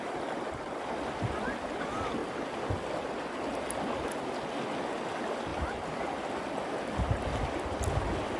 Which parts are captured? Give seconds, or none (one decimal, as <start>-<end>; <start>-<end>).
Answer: 0.0-8.4